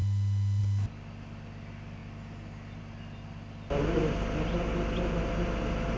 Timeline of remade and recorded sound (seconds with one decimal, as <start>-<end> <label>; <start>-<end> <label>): 0.0-6.0 recorded